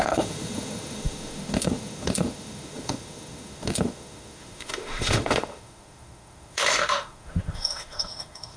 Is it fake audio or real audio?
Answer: fake